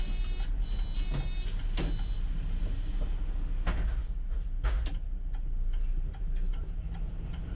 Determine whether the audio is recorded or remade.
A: recorded